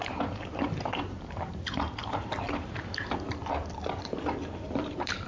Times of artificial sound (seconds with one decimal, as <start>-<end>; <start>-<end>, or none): 0.0-3.4; 4.0-5.3